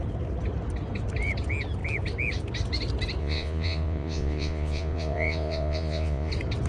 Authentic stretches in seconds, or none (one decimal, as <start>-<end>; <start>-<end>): 0.0-3.2; 6.3-6.7